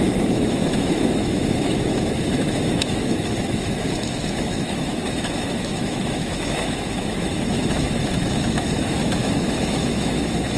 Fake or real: fake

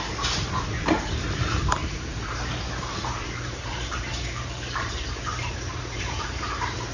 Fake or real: fake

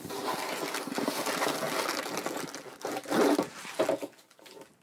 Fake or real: real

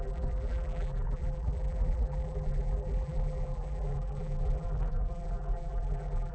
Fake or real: fake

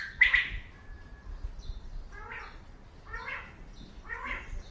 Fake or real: real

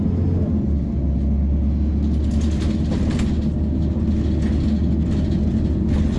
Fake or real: real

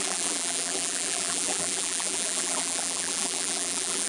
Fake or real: fake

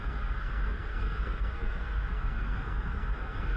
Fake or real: fake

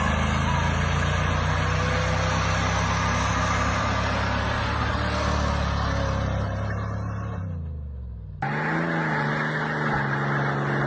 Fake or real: real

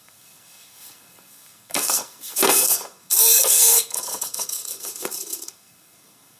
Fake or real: fake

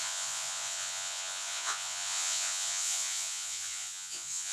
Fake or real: fake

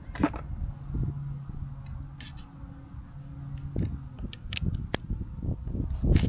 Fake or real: real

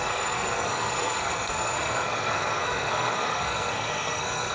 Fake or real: fake